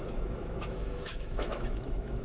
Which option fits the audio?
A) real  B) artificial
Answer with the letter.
B